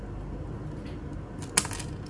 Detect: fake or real real